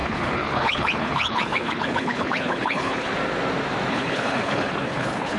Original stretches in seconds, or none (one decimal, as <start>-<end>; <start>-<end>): 3.1-3.9